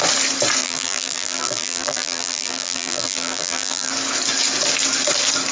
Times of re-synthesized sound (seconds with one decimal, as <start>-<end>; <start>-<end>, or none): 0.6-3.9